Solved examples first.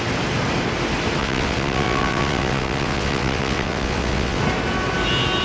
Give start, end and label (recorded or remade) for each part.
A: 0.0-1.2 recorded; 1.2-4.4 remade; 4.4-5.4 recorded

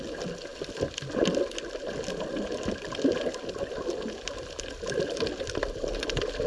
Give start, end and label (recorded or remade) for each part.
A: 0.0-6.5 recorded

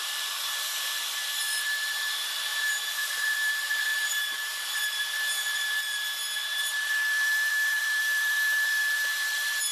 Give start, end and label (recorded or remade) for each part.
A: 0.0-9.7 remade

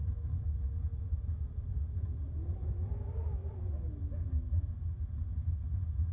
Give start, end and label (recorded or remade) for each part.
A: 0.0-6.1 recorded

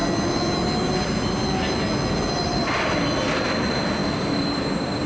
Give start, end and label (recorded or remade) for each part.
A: 0.0-5.1 recorded

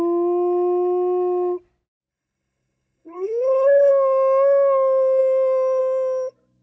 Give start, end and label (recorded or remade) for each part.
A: 0.0-2.1 recorded; 2.1-3.9 remade; 3.9-6.6 recorded

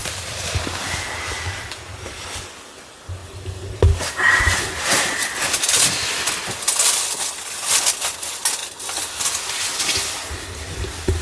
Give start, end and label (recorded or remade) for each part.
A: 0.0-0.6 remade; 0.6-3.2 recorded; 3.2-5.0 remade; 5.0-11.2 recorded

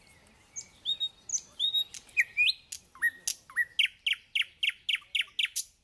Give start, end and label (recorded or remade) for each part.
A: 0.0-5.8 recorded